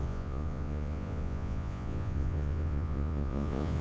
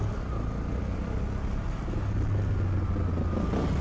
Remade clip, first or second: first